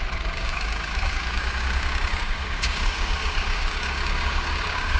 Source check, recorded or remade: remade